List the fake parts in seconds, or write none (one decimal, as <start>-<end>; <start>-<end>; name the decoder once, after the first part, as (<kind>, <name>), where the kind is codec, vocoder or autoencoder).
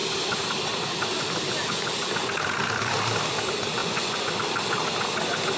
3.8-4.3 (vocoder, Vocos)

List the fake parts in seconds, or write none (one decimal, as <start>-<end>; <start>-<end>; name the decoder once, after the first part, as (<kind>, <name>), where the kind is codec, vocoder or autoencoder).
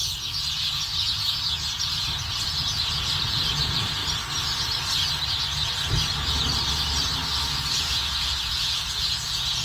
0.5-4.0 (vocoder, Vocos); 7.7-9.6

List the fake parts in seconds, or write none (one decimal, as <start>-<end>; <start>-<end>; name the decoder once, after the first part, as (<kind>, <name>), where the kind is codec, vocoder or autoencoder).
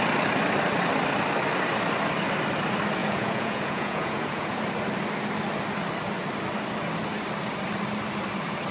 3.0-4.6 (vocoder, Vocos)